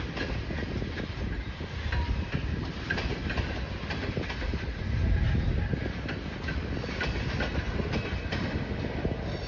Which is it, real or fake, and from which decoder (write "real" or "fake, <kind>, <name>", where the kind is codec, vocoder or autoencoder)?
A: real